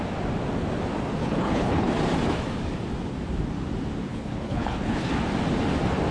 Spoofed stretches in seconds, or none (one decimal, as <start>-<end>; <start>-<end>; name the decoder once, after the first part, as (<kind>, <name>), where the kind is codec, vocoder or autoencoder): 1.2-1.9 (codec, HILCodec); 4.1-5.1